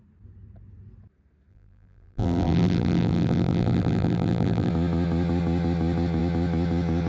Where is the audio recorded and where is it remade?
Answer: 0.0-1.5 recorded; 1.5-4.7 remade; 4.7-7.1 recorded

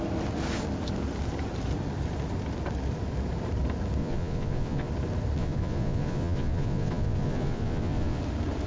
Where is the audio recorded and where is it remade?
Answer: 0.0-4.0 recorded; 4.0-4.9 remade; 4.9-5.4 recorded; 5.4-8.2 remade; 8.2-8.7 recorded

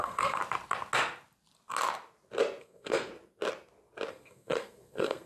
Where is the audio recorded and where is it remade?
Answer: 0.0-0.4 remade; 0.4-2.6 recorded; 2.6-3.1 remade; 3.1-4.1 recorded; 4.1-5.3 remade

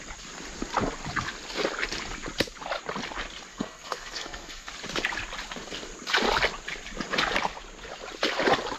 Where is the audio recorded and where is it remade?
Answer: 0.0-3.5 recorded; 3.5-4.7 remade; 4.7-8.8 recorded

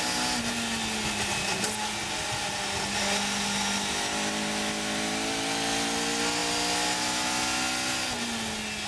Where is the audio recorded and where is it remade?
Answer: 0.0-8.9 recorded